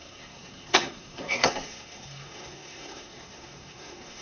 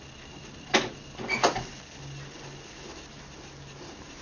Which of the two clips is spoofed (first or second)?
first